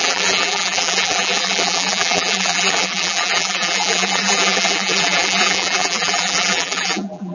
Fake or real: fake